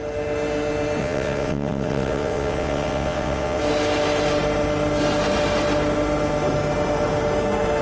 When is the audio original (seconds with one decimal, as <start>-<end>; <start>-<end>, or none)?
0.0-1.0; 3.6-7.8